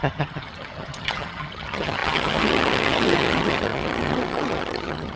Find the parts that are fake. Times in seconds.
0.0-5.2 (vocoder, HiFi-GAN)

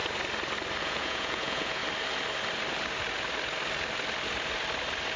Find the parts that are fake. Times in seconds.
0.8-1.8 (vocoder, Vocos)

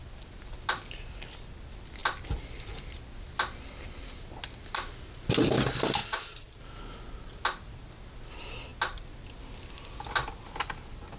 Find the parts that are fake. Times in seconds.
6.0-6.6 (vocoder, Vocos)

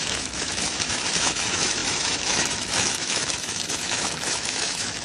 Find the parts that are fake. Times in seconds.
0.0-5.0 (autoencoder, DAC-VAE)

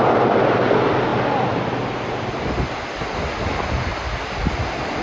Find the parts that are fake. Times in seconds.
none